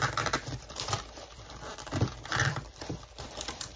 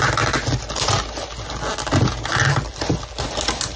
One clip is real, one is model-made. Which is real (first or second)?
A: second